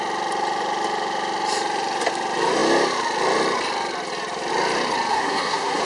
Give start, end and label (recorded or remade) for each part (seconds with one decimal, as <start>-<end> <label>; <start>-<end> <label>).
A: 0.0-5.1 recorded; 5.1-5.8 remade